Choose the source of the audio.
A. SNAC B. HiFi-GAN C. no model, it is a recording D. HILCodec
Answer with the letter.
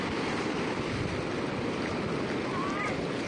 C